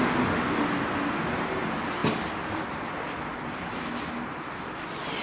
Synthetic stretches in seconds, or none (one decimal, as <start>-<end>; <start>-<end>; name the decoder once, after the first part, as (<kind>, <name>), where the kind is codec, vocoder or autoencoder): none